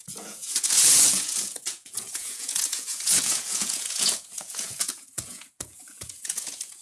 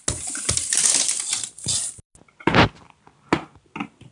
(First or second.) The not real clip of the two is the first